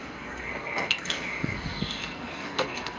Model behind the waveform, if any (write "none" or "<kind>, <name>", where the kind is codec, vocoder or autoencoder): codec, SNAC